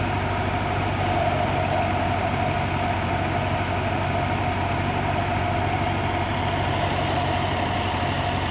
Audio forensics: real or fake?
real